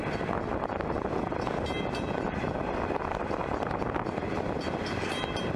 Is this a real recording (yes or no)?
yes